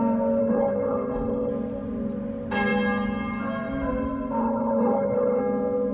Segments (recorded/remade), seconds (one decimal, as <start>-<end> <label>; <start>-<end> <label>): 0.0-0.4 recorded; 0.4-1.5 remade; 1.5-4.4 recorded; 4.4-5.4 remade; 5.4-5.9 recorded